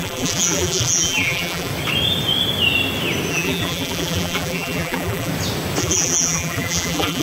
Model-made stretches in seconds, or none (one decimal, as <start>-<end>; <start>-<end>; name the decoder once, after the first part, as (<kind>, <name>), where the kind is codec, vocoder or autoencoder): 0.0-1.7 (vocoder, BigVGAN v2); 3.3-5.3; 5.8-7.2